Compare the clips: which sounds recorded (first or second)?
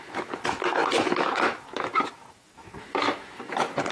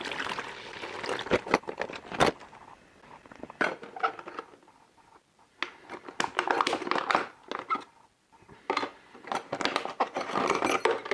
second